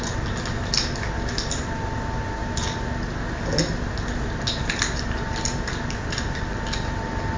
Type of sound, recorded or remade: recorded